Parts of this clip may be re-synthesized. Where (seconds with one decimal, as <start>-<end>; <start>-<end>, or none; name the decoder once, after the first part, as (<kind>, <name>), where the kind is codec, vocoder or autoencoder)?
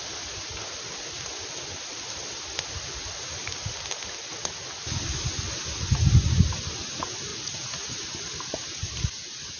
7.3-8.1 (vocoder, Vocos)